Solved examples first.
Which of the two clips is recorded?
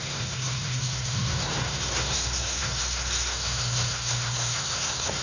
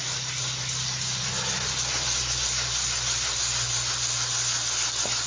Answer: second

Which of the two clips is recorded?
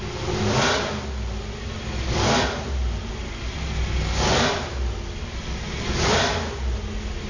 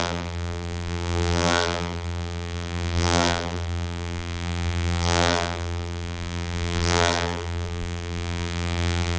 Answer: first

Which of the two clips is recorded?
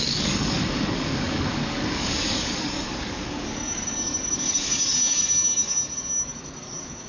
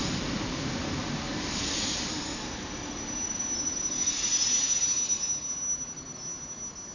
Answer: second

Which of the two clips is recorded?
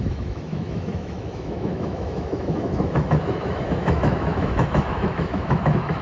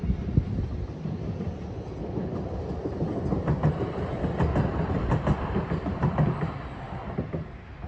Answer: second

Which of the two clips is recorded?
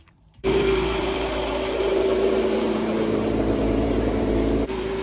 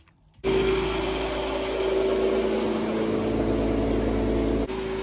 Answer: second